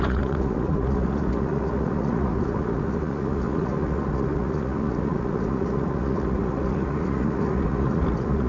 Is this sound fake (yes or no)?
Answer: yes